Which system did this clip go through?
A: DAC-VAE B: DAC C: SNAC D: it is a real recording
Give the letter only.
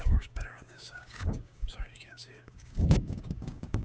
B